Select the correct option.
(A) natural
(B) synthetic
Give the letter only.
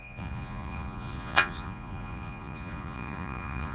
B